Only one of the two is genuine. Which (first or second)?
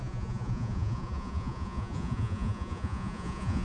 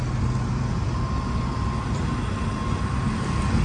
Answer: second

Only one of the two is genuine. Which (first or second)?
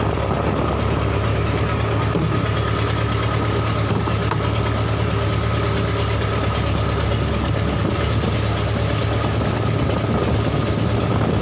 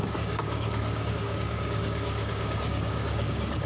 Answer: first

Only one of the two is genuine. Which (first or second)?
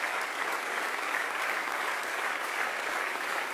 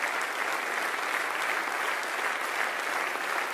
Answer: second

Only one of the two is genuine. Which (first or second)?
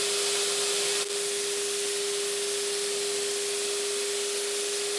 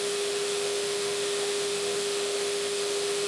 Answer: first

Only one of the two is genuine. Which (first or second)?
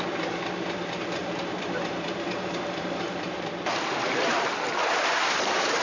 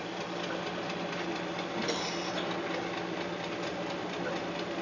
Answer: second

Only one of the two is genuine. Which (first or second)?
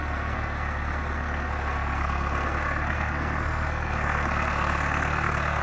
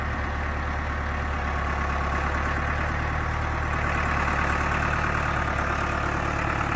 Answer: second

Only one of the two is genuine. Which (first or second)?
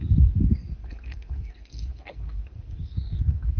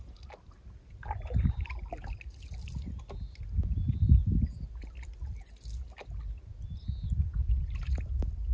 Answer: second